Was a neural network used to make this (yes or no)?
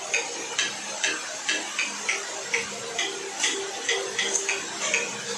no